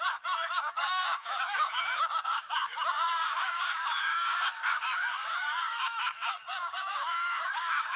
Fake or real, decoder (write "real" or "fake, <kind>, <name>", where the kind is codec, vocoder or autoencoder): fake, codec, DAC